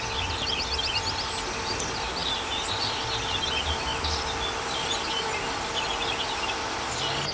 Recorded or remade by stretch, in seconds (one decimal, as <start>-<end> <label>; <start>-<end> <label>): 0.0-2.2 recorded; 2.2-3.0 remade; 3.0-7.3 recorded